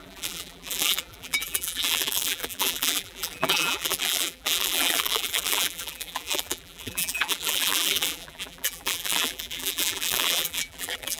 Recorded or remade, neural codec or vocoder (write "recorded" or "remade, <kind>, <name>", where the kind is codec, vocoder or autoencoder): remade, vocoder, BigVGAN v2